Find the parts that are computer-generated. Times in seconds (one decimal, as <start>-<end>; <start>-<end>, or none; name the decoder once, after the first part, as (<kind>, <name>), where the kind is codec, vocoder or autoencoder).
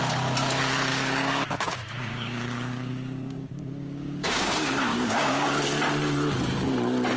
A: 0.9-4.5 (codec, DAC); 4.9-5.6